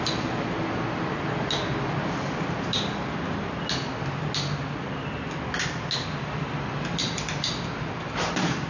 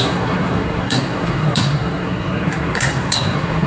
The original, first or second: first